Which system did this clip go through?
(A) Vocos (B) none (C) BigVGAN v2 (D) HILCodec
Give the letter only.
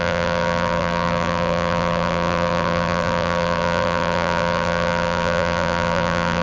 C